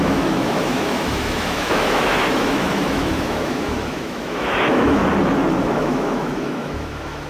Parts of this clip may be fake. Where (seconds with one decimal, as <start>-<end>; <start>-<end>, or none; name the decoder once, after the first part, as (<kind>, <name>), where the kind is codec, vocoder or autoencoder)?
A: 0.0-5.0 (autoencoder, DAC-VAE); 5.6-7.3